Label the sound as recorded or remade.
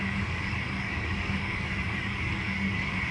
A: remade